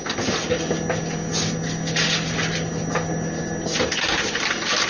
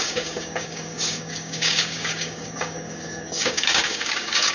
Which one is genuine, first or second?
first